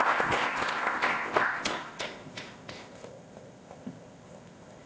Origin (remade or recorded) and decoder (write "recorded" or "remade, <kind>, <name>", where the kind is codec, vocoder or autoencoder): remade, codec, ZipCodec